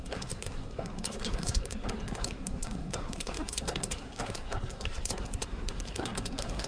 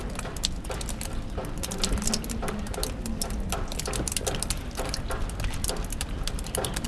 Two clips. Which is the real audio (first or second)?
second